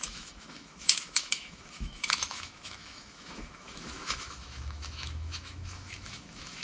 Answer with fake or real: fake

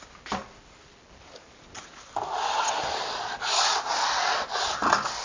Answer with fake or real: real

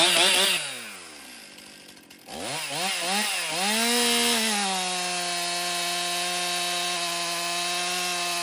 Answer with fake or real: real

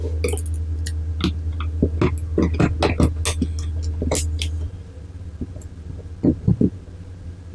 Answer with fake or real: real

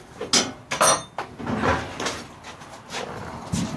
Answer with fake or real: real